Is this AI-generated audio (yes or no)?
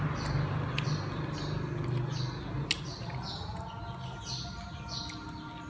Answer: no